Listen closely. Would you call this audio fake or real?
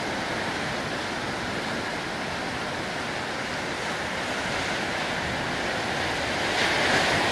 real